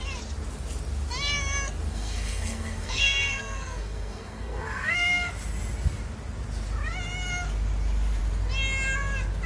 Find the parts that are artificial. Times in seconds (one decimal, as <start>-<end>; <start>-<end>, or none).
1.9-5.3